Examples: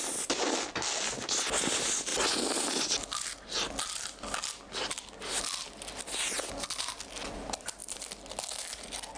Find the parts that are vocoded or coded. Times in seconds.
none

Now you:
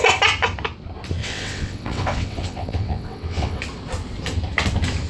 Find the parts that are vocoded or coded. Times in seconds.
1.2-3.6

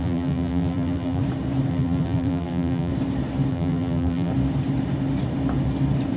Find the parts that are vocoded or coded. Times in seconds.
0.0-1.2; 1.7-2.9; 3.5-4.3

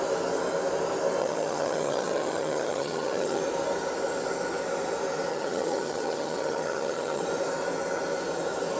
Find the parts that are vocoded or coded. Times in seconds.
1.2-3.4; 5.3-7.2

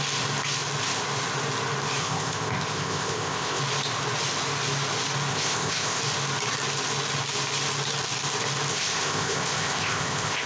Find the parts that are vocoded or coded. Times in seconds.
2.0-3.6; 5.3-6.0; 8.7-10.5

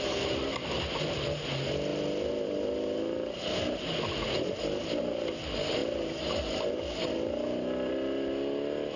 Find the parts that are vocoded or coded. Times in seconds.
none